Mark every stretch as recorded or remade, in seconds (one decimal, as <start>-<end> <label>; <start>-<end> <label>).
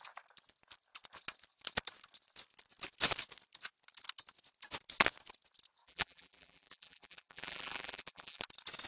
0.0-5.8 recorded; 5.8-8.4 remade; 8.4-8.9 recorded